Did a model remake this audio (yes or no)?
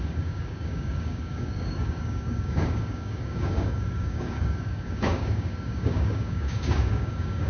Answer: yes